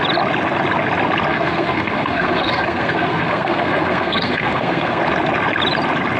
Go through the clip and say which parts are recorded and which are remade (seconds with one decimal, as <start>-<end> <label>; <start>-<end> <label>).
0.0-1.3 recorded; 1.3-5.0 remade; 5.0-6.2 recorded